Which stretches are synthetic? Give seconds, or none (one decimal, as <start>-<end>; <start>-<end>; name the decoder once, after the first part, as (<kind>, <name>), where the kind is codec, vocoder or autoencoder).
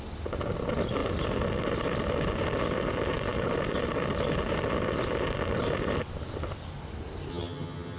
7.3-8.0 (vocoder, HiFi-GAN)